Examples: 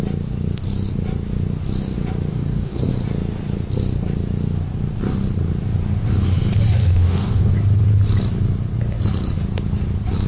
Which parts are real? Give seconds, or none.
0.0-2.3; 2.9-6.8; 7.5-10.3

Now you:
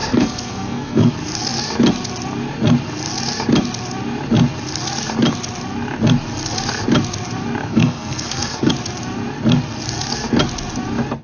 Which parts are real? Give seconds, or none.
1.1-7.6; 8.7-11.2

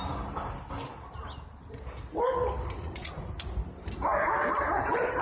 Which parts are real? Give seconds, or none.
0.0-2.8; 3.4-5.2

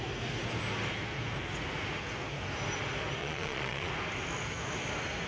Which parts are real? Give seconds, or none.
0.0-3.2; 3.9-5.3